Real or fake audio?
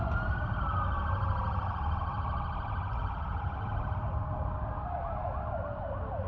real